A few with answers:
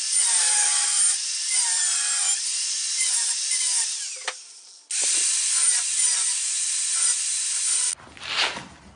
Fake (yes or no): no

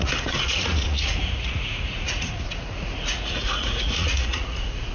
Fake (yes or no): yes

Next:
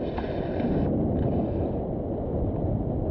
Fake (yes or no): no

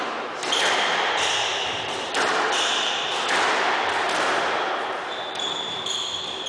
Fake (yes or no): yes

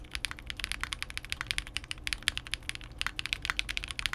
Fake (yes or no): no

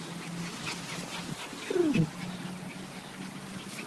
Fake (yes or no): no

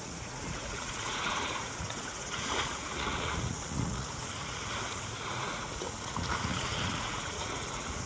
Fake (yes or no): yes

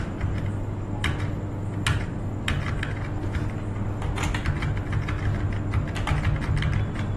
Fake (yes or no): no